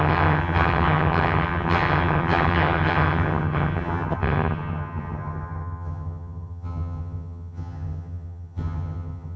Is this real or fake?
fake